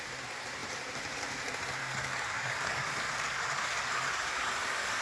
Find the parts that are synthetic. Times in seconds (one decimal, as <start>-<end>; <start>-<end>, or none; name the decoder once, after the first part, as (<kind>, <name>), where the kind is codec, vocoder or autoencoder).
1.8-5.0 (codec, DAC)

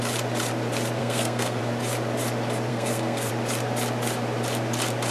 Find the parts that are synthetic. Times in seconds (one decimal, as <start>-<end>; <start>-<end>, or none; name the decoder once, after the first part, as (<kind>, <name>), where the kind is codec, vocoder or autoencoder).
1.0-1.6 (codec, SNAC); 2.7-3.3